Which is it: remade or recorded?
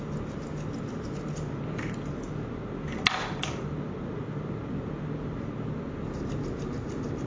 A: recorded